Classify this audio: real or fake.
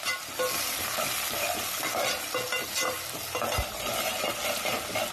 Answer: real